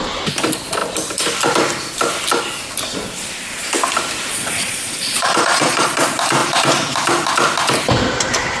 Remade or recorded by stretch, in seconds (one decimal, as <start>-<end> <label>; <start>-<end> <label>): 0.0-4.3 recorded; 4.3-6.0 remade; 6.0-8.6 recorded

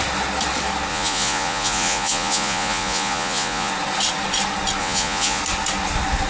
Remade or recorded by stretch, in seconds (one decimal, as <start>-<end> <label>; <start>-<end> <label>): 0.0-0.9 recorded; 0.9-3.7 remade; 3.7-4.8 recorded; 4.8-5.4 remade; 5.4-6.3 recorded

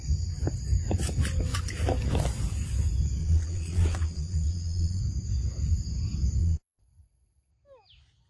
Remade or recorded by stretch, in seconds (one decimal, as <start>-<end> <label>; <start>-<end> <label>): 0.0-3.2 recorded; 3.2-5.0 remade; 5.0-6.4 recorded; 6.4-7.5 remade; 7.5-8.3 recorded

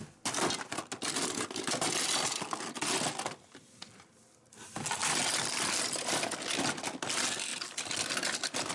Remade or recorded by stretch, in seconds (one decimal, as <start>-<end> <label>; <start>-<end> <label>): 0.0-8.7 recorded

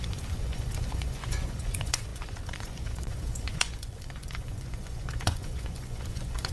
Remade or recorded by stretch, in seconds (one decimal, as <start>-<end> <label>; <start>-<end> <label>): 0.0-6.5 remade

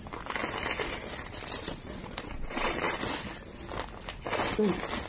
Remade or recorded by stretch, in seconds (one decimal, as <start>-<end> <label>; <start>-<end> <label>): 0.0-1.6 recorded; 1.6-2.9 remade; 2.9-5.1 recorded

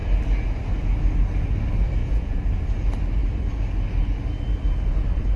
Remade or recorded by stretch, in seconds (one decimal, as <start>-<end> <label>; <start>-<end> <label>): 0.0-2.0 recorded; 2.0-2.6 remade; 2.6-5.4 recorded

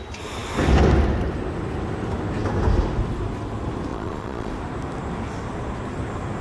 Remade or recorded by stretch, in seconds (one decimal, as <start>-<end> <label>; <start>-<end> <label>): 0.0-3.9 recorded; 3.9-4.5 remade; 4.5-6.4 recorded